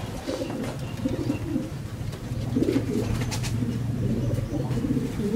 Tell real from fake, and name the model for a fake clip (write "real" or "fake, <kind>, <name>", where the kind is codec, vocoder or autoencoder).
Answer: real